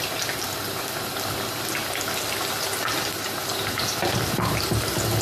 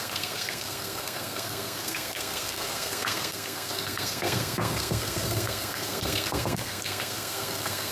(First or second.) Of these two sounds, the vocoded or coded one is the second